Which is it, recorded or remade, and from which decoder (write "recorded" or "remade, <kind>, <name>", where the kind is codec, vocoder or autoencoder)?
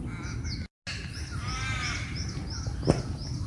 recorded